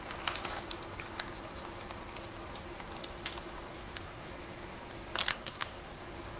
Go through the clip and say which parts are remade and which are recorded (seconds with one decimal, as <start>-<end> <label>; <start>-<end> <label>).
0.0-3.7 recorded; 3.7-4.3 remade; 4.3-5.3 recorded; 5.3-6.0 remade; 6.0-6.4 recorded